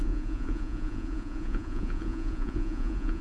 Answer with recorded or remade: remade